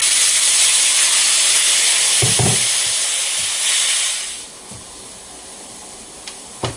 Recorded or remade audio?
recorded